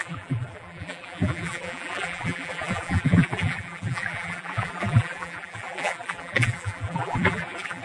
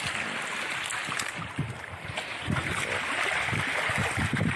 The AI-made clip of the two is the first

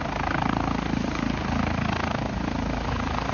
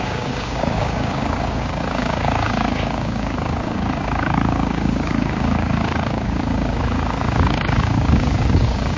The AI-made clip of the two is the second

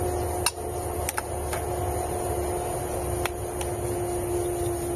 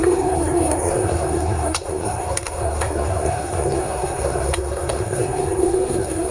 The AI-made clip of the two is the second